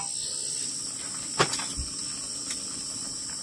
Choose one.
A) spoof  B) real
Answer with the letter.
B